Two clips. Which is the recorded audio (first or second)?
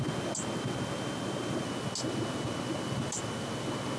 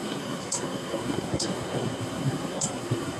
first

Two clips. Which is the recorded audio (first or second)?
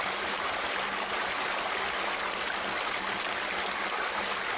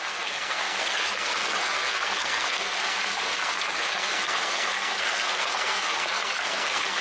first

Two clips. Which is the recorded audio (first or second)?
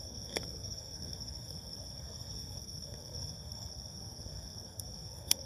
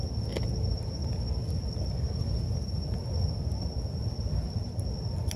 second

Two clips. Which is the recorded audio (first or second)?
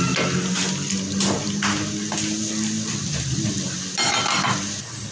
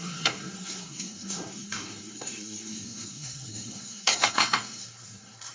first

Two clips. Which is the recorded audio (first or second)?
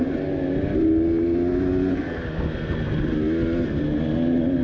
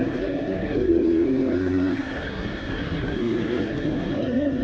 first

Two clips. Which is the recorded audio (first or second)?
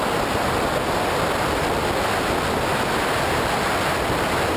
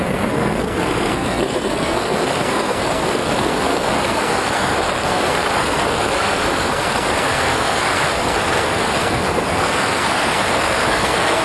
first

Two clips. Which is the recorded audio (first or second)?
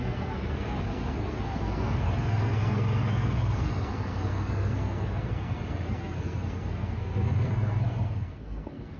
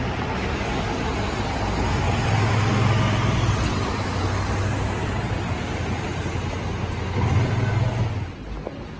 second